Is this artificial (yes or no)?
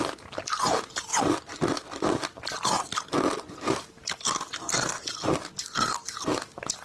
no